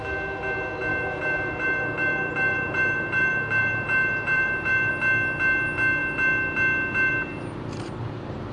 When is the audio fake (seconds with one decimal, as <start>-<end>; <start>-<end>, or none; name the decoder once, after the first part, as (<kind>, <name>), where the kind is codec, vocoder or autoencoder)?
0.9-4.9 (vocoder, BigVGAN v2)